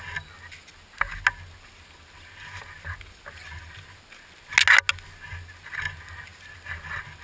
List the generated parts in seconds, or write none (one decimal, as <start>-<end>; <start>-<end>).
none